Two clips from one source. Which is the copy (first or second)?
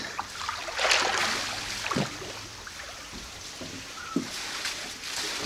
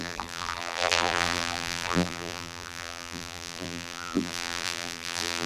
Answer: second